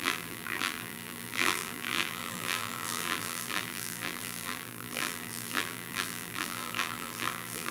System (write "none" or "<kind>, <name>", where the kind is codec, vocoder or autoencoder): vocoder, BigVGAN v2